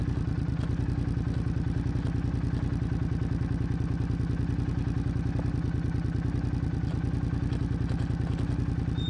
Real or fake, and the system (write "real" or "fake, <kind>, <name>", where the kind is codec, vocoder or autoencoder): real